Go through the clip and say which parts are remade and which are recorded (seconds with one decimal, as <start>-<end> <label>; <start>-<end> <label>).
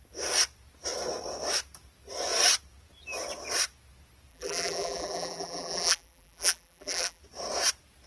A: 0.0-4.3 recorded; 4.3-7.2 remade; 7.2-8.1 recorded